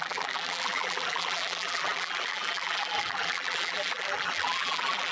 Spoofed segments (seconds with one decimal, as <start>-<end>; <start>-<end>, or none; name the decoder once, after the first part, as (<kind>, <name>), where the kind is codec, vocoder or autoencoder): 0.0-5.1 (vocoder, BigVGAN v2)